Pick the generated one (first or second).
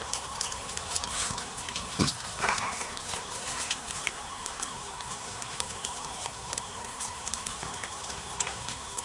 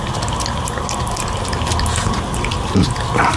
first